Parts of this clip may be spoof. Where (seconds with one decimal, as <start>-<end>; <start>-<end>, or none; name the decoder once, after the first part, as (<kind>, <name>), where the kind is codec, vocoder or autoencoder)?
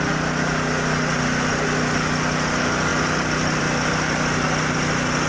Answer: none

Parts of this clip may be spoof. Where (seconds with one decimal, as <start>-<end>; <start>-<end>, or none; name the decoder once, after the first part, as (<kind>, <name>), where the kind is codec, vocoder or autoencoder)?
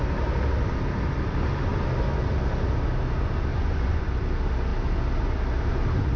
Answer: 3.5-4.0 (vocoder, Vocos)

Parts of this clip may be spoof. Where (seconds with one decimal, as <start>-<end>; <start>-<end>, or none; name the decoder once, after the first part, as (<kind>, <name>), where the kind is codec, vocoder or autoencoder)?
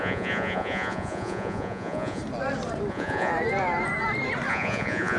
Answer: 0.0-2.2 (vocoder, Vocos); 2.9-3.3; 4.5-5.2